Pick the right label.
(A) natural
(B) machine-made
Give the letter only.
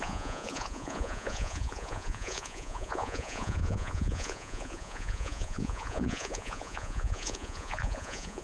B